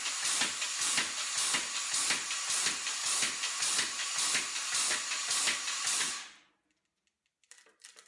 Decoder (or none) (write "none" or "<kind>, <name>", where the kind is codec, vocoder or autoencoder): none